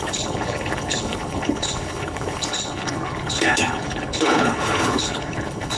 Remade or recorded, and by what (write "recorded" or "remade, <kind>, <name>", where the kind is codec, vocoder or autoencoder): remade, codec, HILCodec